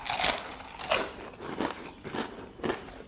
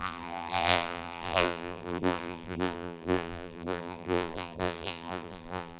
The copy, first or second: second